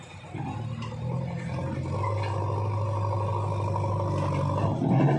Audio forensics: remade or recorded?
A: recorded